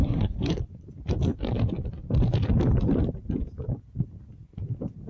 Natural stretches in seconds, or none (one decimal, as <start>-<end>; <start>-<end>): 0.6-5.1